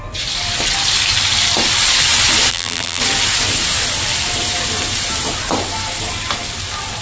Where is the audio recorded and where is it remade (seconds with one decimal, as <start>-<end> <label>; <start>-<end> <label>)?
0.0-2.5 recorded; 2.5-3.0 remade; 3.0-7.0 recorded